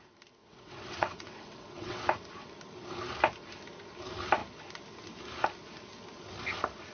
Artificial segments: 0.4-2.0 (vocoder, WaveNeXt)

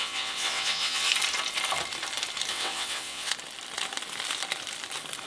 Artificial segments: 0.0-1.1 (vocoder, WaveNeXt); 2.5-3.3

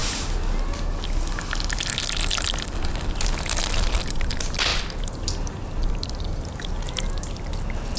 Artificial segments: none

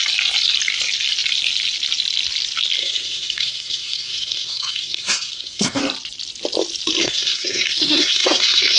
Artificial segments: 2.8-5.8 (codec, SNAC); 7.0-8.8

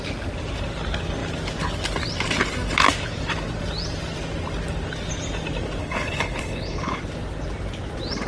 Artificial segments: 5.8-7.0 (codec, HILCodec)

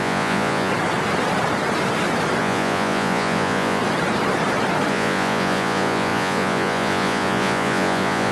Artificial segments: 0.0-0.7 (vocoder, Vocos); 2.4-3.8; 4.9-8.3